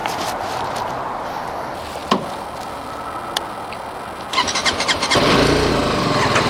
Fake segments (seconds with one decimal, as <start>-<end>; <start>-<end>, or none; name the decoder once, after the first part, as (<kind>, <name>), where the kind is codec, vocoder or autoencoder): 0.0-0.9 (vocoder, BigVGAN v2); 4.6-5.7